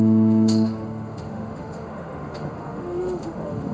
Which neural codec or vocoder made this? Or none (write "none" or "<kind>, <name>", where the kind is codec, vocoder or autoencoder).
autoencoder, DAC-VAE